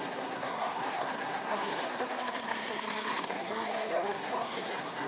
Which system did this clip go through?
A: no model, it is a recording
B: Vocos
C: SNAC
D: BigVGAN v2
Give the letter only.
C